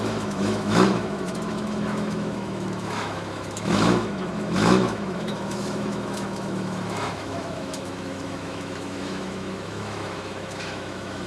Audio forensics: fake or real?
fake